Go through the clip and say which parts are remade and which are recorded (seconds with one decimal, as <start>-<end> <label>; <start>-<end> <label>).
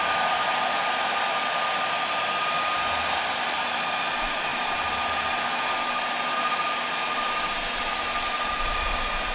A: 0.0-9.3 recorded